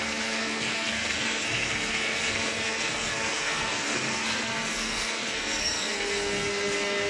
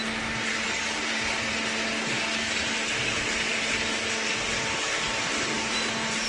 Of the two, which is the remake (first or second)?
first